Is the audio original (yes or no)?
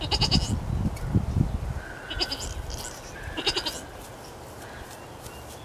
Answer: yes